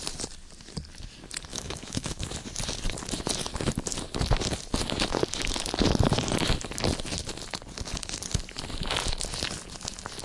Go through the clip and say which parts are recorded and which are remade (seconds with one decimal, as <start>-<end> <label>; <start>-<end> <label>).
0.0-1.5 recorded; 1.5-2.3 remade; 2.3-10.2 recorded